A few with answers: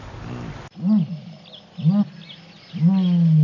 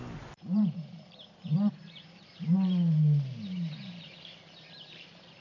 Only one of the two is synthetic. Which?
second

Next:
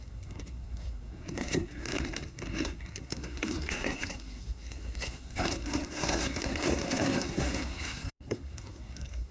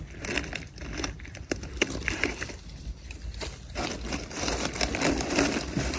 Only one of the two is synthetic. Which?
first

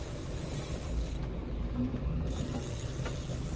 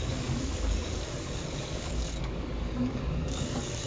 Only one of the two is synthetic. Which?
second